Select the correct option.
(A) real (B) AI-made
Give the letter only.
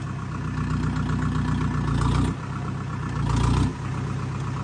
A